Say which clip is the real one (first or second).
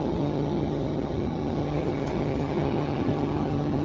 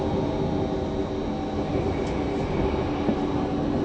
second